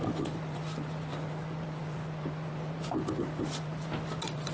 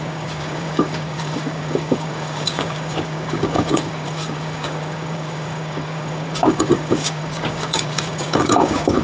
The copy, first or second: second